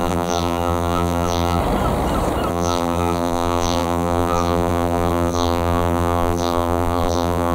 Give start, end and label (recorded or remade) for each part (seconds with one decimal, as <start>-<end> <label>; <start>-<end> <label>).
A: 0.0-1.6 remade; 1.6-2.5 recorded; 2.5-7.5 remade